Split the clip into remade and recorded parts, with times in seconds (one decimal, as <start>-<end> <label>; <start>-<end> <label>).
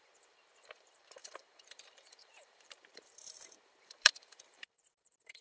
0.0-5.4 remade